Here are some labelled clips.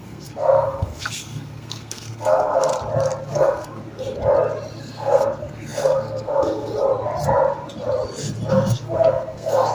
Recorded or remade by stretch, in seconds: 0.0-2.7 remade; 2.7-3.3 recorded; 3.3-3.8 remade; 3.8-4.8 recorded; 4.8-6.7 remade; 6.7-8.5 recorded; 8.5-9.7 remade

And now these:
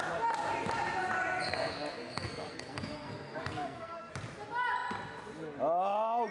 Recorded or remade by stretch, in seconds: 0.0-1.5 recorded; 1.5-4.1 remade; 4.1-6.3 recorded

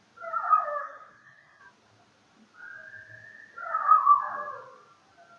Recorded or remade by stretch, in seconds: 0.0-0.8 recorded; 0.8-1.6 remade; 1.6-5.4 recorded